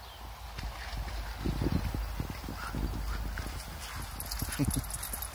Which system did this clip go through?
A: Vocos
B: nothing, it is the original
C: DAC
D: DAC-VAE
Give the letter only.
B